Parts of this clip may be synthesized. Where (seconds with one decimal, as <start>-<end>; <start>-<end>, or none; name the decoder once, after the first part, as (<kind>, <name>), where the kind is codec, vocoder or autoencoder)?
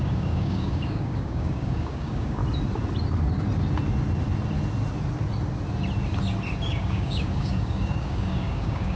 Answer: 0.0-2.4 (codec, DAC); 6.7-9.0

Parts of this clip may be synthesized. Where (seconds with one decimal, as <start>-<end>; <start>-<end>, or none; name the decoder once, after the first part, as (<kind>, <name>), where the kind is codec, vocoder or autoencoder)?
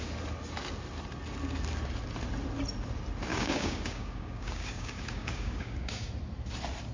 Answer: 3.3-6.1 (codec, DAC)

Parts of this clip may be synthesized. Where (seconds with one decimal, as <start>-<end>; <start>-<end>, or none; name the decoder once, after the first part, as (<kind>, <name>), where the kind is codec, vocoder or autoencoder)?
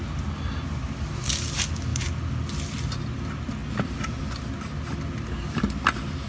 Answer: none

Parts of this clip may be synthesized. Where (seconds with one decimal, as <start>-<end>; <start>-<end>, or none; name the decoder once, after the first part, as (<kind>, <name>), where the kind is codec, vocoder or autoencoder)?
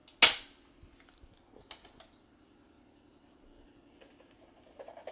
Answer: none